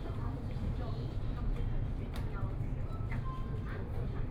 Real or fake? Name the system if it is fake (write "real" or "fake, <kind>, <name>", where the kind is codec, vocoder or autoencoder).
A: fake, vocoder, BigVGAN v2